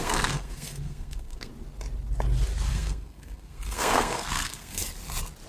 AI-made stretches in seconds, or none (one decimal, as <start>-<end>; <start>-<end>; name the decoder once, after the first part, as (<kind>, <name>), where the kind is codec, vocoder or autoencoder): 0.0-1.5 (codec, SNAC); 2.7-4.8

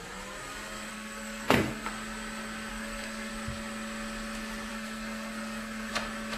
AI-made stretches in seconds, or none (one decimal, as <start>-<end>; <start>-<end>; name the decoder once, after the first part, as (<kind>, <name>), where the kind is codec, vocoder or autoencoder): 0.9-1.9 (codec, SNAC); 2.7-3.3; 4.7-5.9

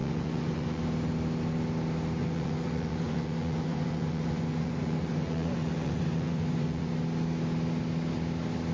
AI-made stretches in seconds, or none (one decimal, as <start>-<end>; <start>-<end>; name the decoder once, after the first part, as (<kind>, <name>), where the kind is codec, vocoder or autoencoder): 0.0-0.8 (vocoder, Vocos); 2.2-7.0

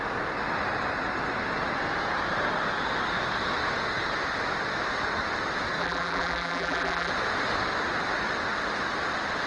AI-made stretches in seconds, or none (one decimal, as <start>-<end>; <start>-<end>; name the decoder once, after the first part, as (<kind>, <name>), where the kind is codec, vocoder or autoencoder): 5.8-7.1 (vocoder, BigVGAN v2)

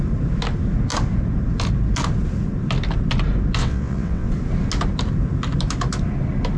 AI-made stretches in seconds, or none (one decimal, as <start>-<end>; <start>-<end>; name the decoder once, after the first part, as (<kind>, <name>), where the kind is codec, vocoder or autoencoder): 3.6-4.3 (vocoder, WaveNeXt)

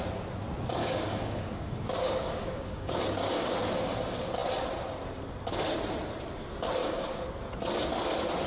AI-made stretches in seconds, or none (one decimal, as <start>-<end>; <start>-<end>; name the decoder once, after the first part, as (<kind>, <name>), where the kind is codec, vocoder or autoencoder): 0.8-3.0 (codec, DAC); 6.8-7.4

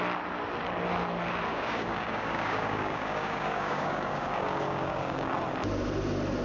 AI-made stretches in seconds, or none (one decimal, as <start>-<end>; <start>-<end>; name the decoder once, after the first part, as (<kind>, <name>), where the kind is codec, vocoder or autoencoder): 1.5-5.3 (codec, DAC)